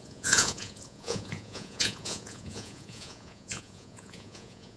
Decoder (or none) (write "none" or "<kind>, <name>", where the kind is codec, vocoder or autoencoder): vocoder, Vocos